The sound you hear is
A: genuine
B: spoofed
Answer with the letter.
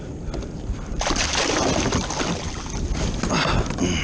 A